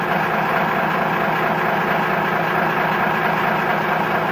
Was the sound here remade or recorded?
recorded